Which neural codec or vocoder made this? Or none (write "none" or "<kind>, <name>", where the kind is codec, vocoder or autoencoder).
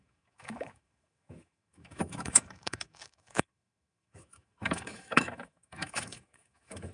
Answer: autoencoder, DAC-VAE